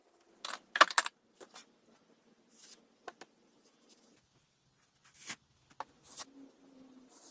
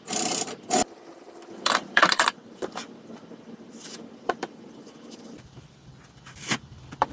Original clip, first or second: first